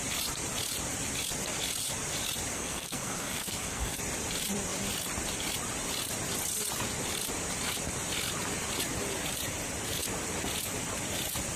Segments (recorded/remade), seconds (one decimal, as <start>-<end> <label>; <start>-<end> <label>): 0.0-2.5 recorded; 2.5-4.0 remade; 4.0-11.6 recorded